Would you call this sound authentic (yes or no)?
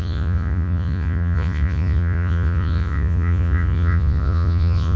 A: no